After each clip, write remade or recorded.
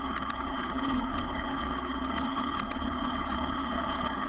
remade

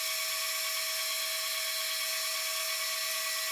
recorded